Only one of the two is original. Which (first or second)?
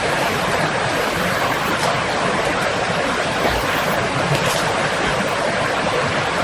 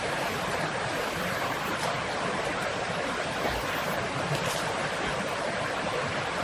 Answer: first